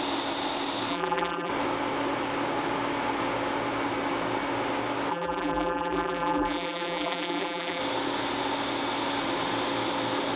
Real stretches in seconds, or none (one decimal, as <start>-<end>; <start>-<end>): 0.0-0.9; 1.5-5.1; 7.8-10.4